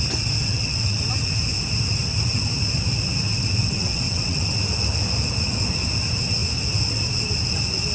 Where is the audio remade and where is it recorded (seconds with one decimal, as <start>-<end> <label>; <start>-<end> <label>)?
0.0-0.4 recorded; 0.4-1.0 remade; 1.0-3.6 recorded; 3.6-4.6 remade; 4.6-7.9 recorded